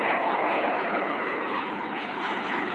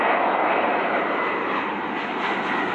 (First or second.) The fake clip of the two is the first